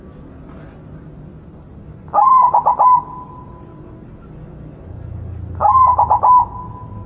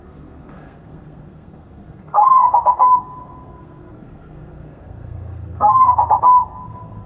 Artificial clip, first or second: second